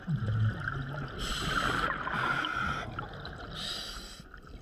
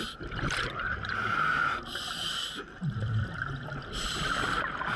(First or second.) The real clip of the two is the first